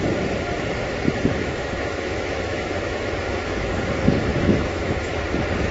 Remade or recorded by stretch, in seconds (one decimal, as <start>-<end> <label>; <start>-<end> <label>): 0.0-1.4 recorded; 1.4-3.9 remade; 3.9-4.3 recorded; 4.3-5.2 remade; 5.2-5.7 recorded